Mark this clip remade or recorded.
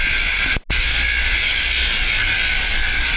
recorded